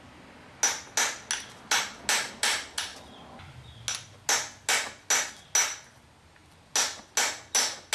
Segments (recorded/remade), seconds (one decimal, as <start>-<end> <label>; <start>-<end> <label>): 0.0-7.9 recorded